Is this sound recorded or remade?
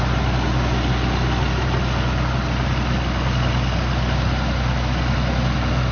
recorded